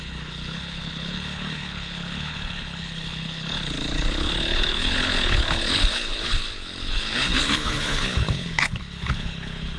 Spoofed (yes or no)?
yes